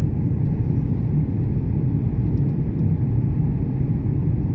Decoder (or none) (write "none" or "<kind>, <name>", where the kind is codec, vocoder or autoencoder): none